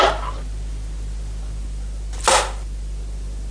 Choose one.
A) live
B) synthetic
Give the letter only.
A